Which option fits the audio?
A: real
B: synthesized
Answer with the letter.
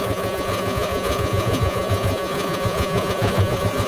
B